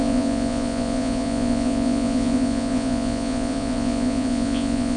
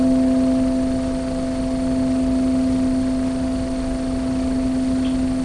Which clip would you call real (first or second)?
second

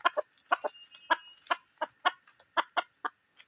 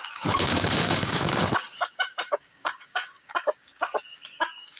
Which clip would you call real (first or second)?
first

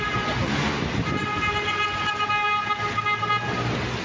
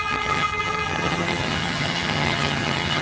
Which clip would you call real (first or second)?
first